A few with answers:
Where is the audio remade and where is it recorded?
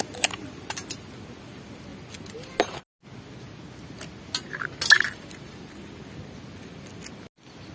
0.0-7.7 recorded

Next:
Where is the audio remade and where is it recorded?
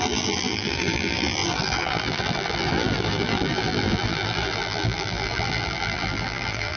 0.0-6.8 remade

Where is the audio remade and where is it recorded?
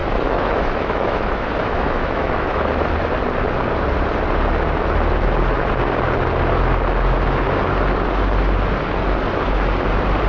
0.0-2.7 remade; 2.7-10.3 recorded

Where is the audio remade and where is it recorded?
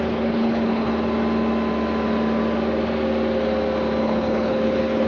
0.0-0.9 remade; 0.9-4.0 recorded; 4.0-5.1 remade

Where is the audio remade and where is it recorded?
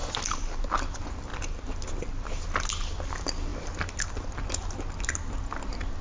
0.0-6.0 recorded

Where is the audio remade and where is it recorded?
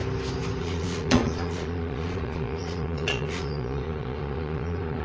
0.0-0.6 recorded; 0.6-5.0 remade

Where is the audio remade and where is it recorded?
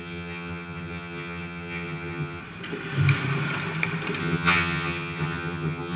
0.0-2.4 remade; 2.4-4.2 recorded; 4.2-6.0 remade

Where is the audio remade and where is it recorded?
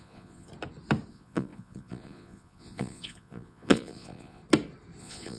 0.0-0.5 remade; 0.5-1.1 recorded; 1.1-4.4 remade; 4.4-5.0 recorded; 5.0-5.4 remade